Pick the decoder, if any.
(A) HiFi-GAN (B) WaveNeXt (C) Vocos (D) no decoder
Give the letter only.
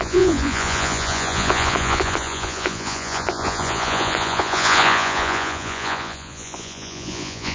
C